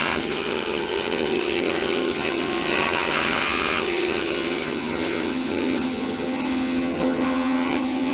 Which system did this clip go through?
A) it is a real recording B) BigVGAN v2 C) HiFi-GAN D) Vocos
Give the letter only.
C